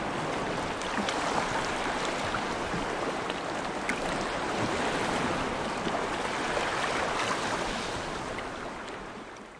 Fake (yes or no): no